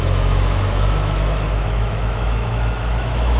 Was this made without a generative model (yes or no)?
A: no